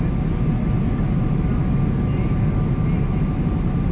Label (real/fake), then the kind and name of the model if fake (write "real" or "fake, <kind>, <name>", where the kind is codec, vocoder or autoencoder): real